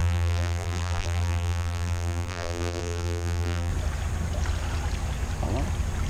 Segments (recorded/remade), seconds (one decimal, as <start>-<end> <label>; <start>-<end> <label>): 0.0-3.7 remade; 3.7-6.1 recorded